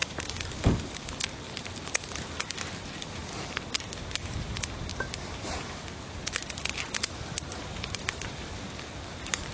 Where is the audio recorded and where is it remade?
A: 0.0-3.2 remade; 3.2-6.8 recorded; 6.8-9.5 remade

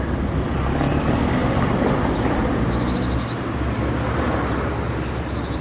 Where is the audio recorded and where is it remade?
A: 0.0-5.6 recorded

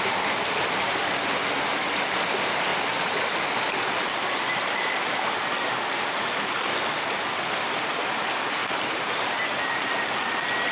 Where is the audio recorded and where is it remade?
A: 0.0-8.6 recorded; 8.6-9.6 remade; 9.6-10.7 recorded